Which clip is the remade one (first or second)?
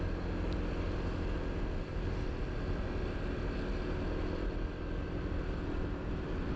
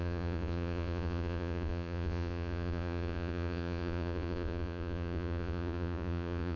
second